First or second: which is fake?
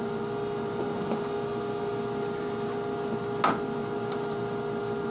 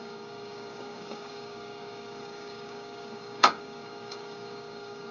second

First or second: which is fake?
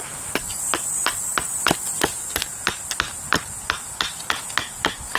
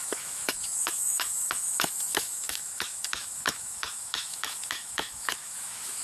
second